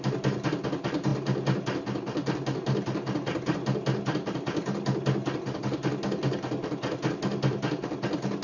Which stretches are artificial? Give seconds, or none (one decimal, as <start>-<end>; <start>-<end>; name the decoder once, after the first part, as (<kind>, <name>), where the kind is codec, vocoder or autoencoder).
none